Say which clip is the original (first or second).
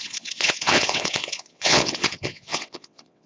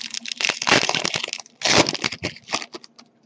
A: second